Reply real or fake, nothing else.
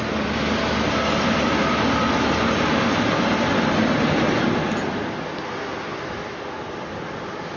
real